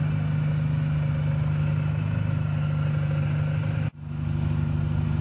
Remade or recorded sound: recorded